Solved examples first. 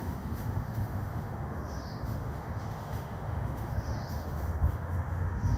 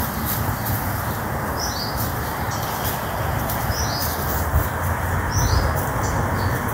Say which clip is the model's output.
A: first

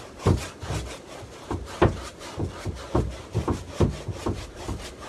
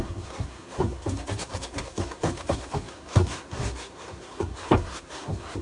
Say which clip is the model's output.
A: second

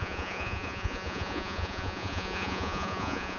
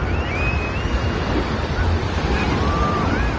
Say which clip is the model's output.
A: first